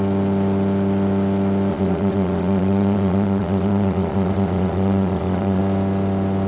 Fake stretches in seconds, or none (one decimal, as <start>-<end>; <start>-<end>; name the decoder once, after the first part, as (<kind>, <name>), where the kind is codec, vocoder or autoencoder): 1.7-5.6 (vocoder, Vocos)